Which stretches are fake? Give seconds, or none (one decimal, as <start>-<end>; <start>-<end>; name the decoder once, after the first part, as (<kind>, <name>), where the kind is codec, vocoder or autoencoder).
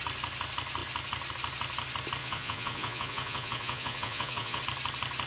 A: 2.2-4.6 (vocoder, Vocos)